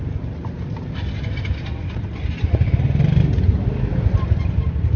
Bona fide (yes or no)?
yes